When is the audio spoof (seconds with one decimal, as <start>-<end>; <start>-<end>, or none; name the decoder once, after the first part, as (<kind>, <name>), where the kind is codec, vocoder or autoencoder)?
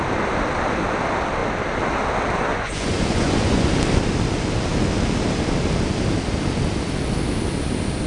2.5-3.7 (vocoder, Vocos)